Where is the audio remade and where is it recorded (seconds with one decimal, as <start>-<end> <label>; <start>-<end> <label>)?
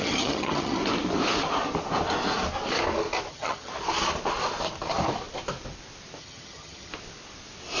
0.0-0.8 remade; 0.8-3.3 recorded; 3.3-3.7 remade; 3.7-6.2 recorded; 6.2-6.9 remade; 6.9-7.8 recorded